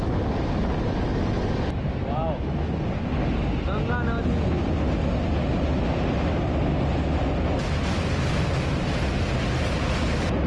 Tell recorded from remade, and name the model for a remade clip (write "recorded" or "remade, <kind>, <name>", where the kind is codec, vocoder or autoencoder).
recorded